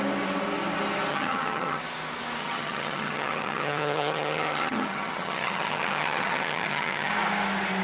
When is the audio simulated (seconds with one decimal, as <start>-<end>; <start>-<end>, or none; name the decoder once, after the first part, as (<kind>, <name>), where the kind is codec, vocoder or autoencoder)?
1.1-1.8 (vocoder, HiFi-GAN); 2.4-7.1